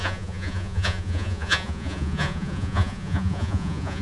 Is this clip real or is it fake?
fake